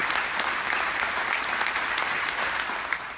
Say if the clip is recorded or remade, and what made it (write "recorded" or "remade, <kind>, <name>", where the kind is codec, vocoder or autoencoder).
recorded